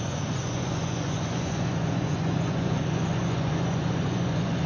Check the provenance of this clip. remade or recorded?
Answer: remade